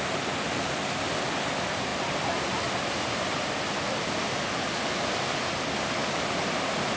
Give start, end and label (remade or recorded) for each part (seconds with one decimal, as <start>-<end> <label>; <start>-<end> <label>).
0.0-1.9 recorded; 1.9-4.3 remade; 4.3-6.0 recorded; 6.0-7.0 remade